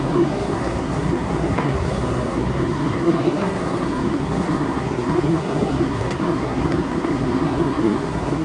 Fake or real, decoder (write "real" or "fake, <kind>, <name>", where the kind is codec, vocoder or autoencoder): fake, codec, SNAC